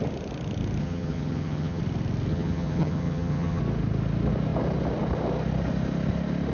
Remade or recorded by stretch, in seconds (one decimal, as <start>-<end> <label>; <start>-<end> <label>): 0.0-0.8 recorded; 0.8-1.8 remade; 1.8-2.3 recorded; 2.3-3.6 remade; 3.6-6.5 recorded